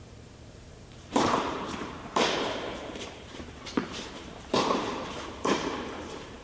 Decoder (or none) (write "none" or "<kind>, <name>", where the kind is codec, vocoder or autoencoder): vocoder, BigVGAN v2